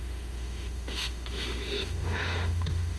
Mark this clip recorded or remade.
remade